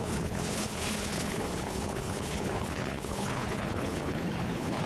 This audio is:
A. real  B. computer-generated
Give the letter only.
B